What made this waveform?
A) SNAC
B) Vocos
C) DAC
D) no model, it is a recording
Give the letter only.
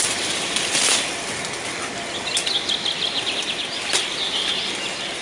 D